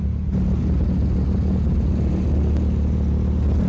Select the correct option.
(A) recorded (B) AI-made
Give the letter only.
A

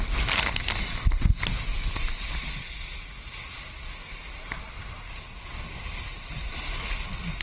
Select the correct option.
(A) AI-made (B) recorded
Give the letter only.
B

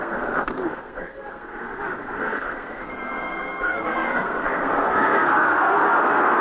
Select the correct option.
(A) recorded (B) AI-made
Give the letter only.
B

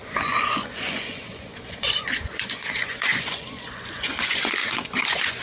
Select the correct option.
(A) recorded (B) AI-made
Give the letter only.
B